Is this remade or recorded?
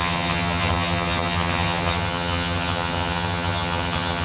remade